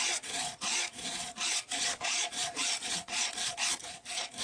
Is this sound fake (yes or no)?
yes